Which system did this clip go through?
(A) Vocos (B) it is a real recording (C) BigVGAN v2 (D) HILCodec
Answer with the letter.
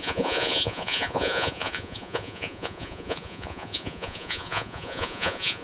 A